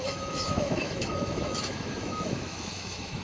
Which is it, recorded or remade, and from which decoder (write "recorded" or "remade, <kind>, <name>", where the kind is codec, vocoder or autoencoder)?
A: remade, autoencoder, DAC-VAE